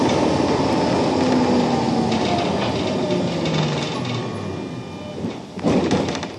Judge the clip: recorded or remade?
recorded